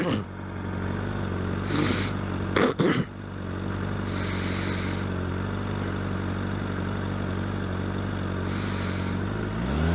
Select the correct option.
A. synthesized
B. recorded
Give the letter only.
B